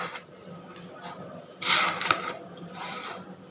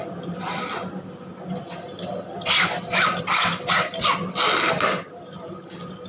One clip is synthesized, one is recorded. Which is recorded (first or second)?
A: second